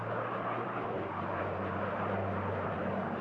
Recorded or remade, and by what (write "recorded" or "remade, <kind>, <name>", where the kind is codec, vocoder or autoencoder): remade, vocoder, BigVGAN v2